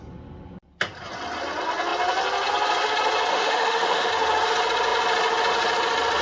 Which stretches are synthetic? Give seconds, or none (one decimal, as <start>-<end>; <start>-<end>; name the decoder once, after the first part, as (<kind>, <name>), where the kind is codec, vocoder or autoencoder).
3.3-4.1 (autoencoder, DAC-VAE)